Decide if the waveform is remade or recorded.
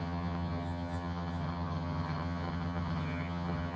remade